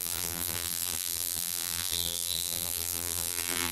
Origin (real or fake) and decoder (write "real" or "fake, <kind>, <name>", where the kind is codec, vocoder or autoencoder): fake, vocoder, BigVGAN v2